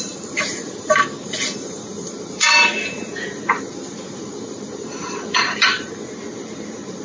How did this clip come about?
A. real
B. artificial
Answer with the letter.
B